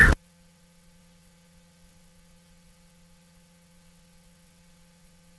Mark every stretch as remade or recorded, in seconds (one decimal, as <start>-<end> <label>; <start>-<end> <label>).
0.0-5.4 remade